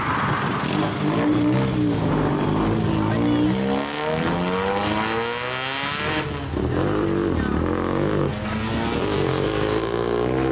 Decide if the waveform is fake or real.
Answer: real